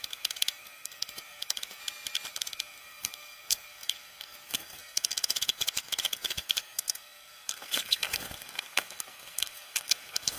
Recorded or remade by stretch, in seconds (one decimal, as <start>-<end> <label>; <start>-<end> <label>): 0.0-1.8 remade; 1.8-2.3 recorded; 2.3-10.4 remade